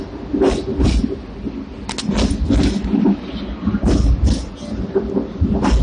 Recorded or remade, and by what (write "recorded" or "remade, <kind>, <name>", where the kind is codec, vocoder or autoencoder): recorded